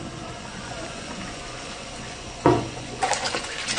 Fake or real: fake